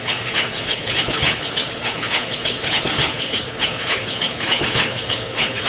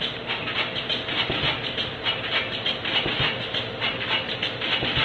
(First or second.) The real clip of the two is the second